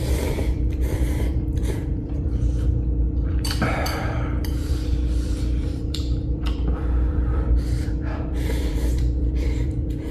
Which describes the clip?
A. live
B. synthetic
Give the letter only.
B